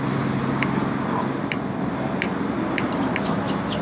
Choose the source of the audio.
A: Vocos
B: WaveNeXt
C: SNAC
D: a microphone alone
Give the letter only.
D